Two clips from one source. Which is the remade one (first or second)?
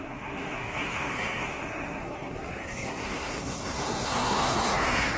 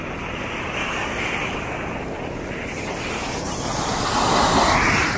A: first